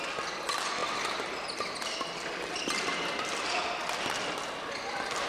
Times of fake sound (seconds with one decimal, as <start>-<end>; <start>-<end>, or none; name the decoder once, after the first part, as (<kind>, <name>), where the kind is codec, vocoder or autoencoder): none